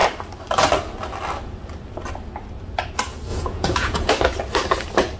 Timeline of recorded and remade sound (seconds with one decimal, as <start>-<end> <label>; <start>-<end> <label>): 0.0-3.3 recorded; 3.3-4.1 remade; 4.1-5.2 recorded